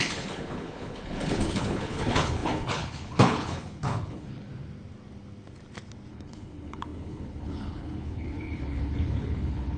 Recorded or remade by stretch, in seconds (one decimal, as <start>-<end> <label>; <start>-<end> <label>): 0.0-4.5 remade; 4.5-6.1 recorded; 6.1-9.8 remade